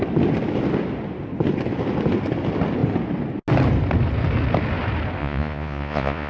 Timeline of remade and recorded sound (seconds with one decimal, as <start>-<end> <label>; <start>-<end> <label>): 0.0-5.2 recorded; 5.2-6.3 remade